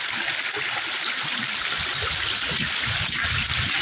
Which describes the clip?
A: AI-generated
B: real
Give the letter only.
A